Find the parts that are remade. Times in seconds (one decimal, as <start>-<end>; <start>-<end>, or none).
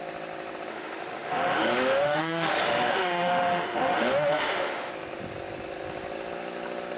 0.7-4.9